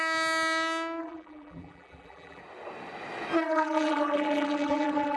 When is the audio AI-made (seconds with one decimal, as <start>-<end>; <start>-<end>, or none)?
1.0-2.4; 3.4-5.2